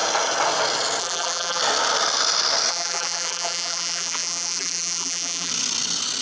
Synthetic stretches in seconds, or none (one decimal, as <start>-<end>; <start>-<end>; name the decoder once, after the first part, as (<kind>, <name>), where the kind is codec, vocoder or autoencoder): 1.0-1.6 (vocoder, BigVGAN v2); 2.7-5.5